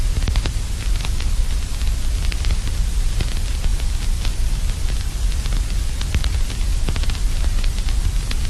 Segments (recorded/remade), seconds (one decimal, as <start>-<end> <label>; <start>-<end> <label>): 0.0-8.5 recorded